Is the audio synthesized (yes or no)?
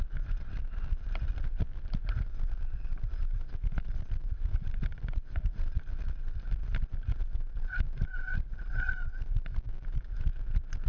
no